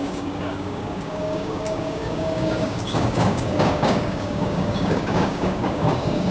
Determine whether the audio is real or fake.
fake